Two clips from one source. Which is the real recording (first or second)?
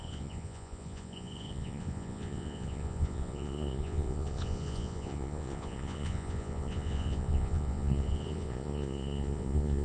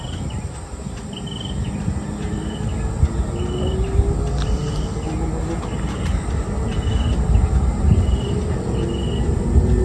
second